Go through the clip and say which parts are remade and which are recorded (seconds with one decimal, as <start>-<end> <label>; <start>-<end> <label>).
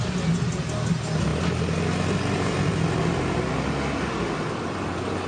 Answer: 0.0-5.3 recorded